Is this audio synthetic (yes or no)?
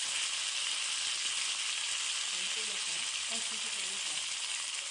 no